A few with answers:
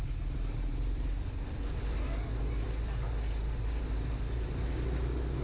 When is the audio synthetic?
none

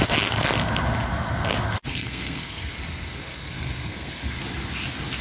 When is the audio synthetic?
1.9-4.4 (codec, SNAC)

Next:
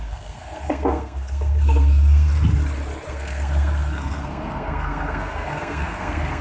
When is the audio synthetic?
0.0-2.3 (codec, SNAC); 3.1-6.4

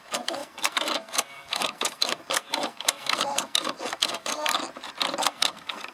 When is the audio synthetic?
0.0-4.6 (codec, SNAC); 5.2-5.9

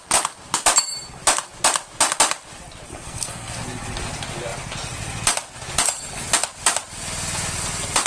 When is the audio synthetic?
2.9-3.6 (codec, SNAC)

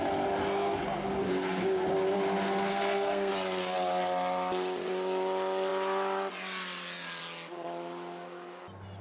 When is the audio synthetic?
2.7-3.3 (codec, SNAC)

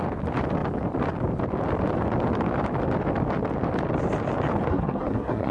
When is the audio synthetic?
4.7-5.5 (codec, SNAC)

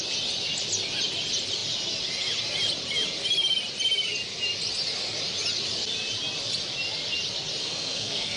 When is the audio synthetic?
7.6-8.4 (codec, SNAC)